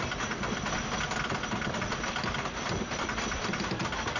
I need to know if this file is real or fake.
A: real